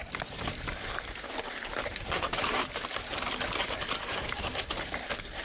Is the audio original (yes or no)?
no